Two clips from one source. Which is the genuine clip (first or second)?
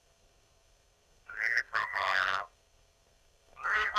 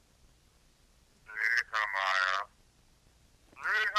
second